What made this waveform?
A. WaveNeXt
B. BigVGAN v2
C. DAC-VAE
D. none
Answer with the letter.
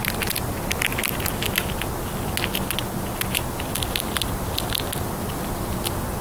D